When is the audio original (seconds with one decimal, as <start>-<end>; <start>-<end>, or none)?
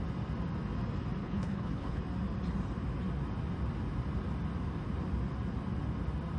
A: 0.0-1.2; 2.0-6.4